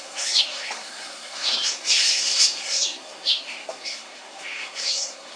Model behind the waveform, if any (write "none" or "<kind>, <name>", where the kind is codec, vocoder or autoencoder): codec, SNAC